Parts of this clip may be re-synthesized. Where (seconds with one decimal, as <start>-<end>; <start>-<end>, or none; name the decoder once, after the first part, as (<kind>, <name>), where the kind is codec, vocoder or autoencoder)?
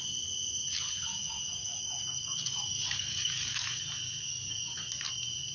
1.1-3.8 (codec, DAC); 4.3-4.9